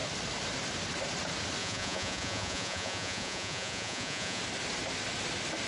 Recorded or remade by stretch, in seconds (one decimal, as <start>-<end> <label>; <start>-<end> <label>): 0.0-1.6 recorded; 1.6-4.4 remade; 4.4-5.7 recorded